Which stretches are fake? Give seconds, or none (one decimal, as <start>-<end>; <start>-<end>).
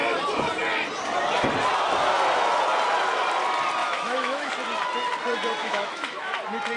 3.8-4.5; 5.6-6.3